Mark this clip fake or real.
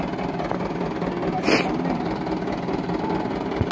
real